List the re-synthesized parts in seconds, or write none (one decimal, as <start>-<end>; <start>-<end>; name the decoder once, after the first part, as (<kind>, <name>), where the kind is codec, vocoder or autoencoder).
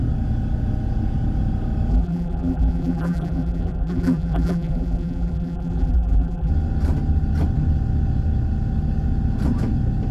1.9-6.5 (vocoder, BigVGAN v2)